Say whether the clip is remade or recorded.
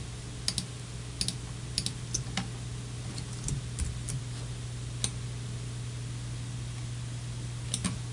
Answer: recorded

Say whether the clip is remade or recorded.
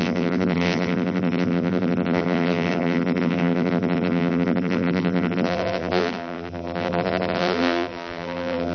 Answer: remade